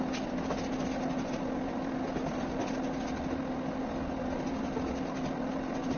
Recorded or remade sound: recorded